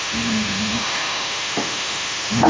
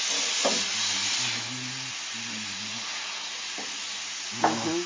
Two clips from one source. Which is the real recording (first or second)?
second